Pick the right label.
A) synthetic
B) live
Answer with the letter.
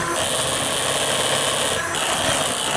B